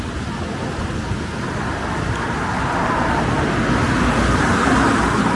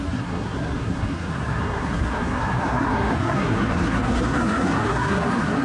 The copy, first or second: second